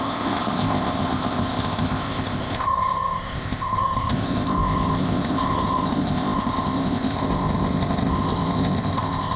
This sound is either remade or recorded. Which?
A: remade